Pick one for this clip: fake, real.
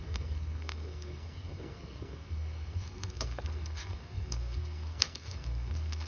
fake